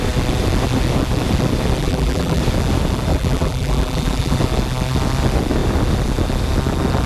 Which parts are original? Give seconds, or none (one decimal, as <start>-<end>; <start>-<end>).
0.0-1.8; 2.4-3.1; 4.4-7.1